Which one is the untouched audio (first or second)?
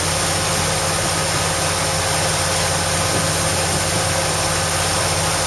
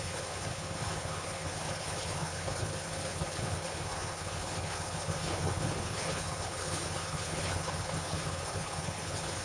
first